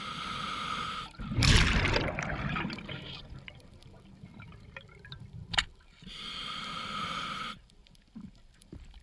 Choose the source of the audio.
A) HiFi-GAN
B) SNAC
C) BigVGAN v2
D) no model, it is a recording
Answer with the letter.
C